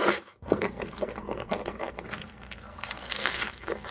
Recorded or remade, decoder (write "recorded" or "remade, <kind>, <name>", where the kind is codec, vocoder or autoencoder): remade, codec, SNAC